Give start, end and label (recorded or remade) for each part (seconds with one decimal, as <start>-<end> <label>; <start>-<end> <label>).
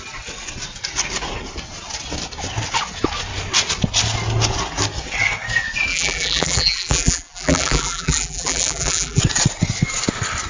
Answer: 0.0-5.9 recorded; 5.9-9.2 remade; 9.2-10.5 recorded